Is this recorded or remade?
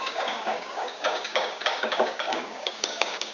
remade